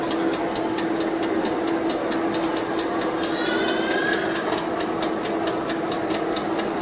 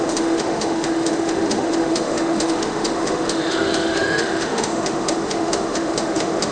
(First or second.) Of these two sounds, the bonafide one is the first